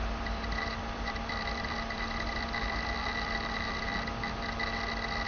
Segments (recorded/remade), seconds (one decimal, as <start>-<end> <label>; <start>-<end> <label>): 0.0-3.9 remade; 3.9-5.3 recorded

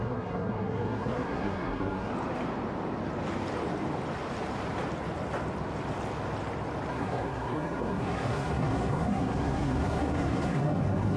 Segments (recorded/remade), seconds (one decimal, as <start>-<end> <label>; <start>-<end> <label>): 0.0-2.1 remade; 2.1-6.9 recorded; 6.9-11.2 remade

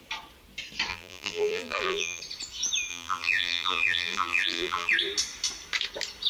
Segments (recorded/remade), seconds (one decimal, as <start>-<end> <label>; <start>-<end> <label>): 0.0-0.9 recorded; 0.9-2.2 remade; 2.2-2.9 recorded; 2.9-4.9 remade; 4.9-6.3 recorded